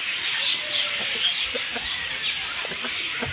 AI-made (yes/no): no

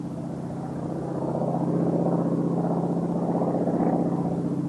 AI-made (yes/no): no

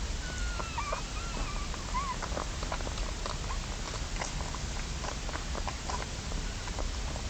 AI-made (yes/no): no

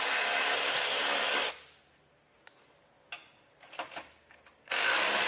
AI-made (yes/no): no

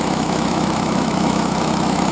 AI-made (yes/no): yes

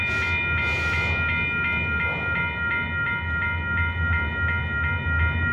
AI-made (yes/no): no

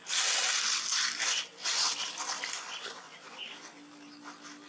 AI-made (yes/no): no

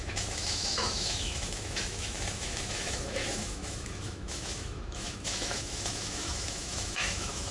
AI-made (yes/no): yes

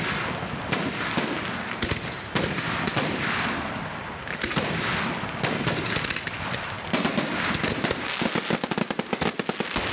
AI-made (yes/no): no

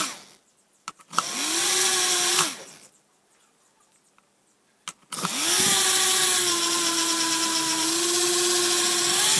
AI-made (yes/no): no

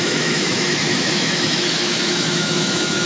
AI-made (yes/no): yes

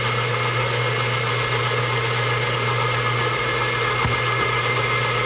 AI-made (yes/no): no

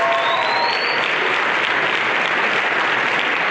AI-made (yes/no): no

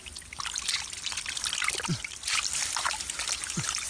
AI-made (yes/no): no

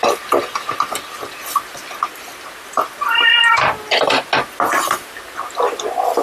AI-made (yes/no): no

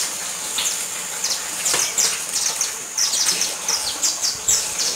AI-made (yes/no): no